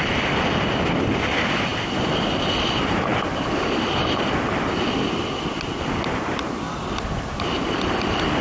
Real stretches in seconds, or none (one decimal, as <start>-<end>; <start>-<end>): 0.0-8.4